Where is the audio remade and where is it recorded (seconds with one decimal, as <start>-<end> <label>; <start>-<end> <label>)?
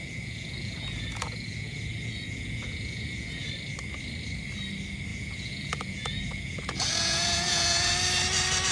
0.0-3.5 remade; 3.5-5.1 recorded; 5.1-7.9 remade; 7.9-8.7 recorded